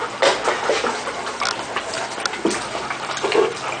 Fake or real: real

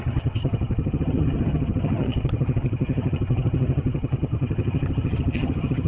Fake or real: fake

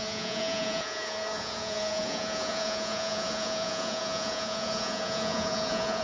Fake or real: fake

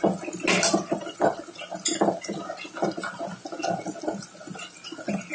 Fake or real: real